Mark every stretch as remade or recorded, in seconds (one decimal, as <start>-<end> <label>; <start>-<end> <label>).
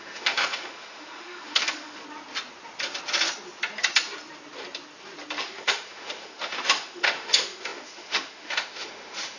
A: 0.0-2.0 remade; 2.0-5.4 recorded; 5.4-9.4 remade